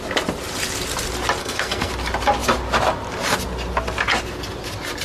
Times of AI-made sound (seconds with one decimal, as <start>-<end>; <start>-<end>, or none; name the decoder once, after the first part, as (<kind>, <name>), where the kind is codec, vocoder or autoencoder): 1.4-1.9 (codec, SNAC)